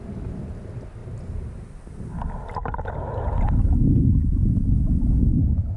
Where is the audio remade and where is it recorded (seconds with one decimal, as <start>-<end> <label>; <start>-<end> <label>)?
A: 0.0-4.2 recorded; 4.2-5.2 remade; 5.2-5.8 recorded